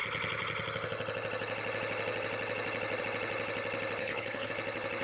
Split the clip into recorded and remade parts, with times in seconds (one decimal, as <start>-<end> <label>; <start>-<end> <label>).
0.0-4.0 recorded; 4.0-4.5 remade; 4.5-5.0 recorded